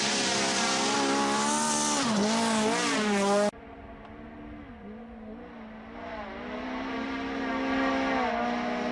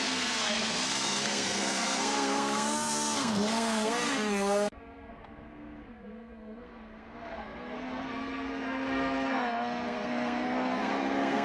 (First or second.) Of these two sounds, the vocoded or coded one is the second